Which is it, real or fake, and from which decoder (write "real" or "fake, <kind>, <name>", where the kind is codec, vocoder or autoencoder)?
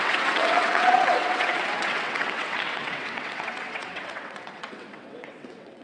fake, vocoder, WaveNeXt